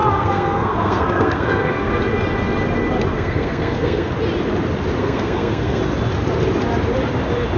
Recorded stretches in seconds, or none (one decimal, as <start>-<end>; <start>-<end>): 2.0-3.1; 4.1-5.0; 5.8-7.6